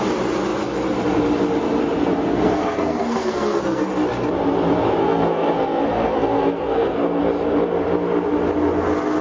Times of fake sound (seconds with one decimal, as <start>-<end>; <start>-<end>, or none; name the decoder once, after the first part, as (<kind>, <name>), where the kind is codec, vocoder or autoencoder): 2.3-3.9 (codec, SNAC); 5.0-7.2